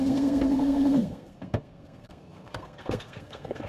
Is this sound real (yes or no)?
no